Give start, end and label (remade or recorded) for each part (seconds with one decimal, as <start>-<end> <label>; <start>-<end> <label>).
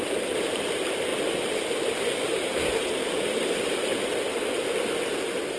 0.0-5.6 recorded